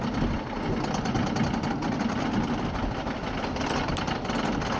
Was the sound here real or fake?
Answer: real